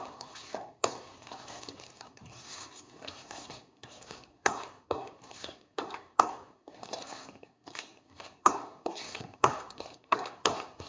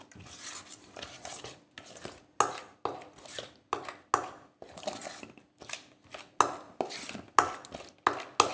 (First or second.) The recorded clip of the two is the second